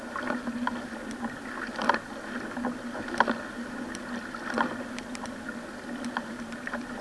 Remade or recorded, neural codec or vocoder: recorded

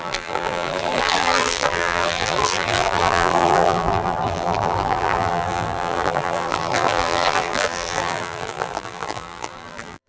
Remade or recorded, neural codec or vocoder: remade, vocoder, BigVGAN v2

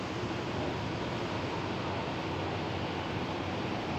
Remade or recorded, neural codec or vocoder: recorded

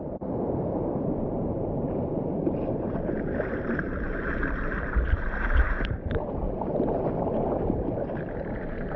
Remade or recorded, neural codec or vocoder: remade, vocoder, BigVGAN v2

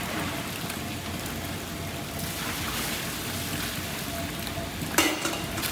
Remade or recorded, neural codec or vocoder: recorded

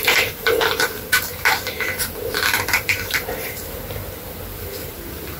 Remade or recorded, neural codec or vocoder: remade, vocoder, BigVGAN v2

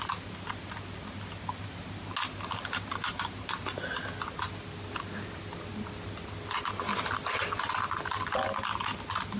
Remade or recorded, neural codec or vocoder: recorded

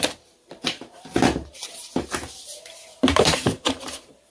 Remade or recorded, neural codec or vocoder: remade, vocoder, BigVGAN v2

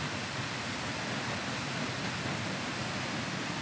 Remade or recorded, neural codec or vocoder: recorded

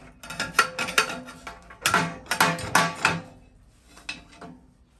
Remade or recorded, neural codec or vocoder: recorded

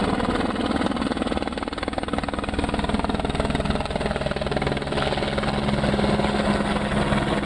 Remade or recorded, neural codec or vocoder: recorded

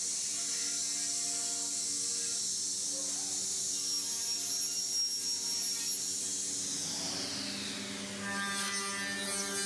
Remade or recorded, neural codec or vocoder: recorded